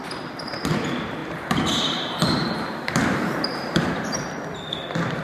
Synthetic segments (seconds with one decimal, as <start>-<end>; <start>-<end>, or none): 1.2-4.3